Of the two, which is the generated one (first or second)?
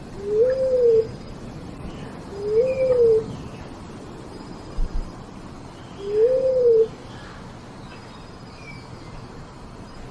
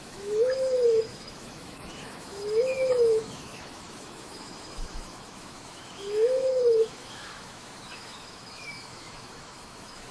second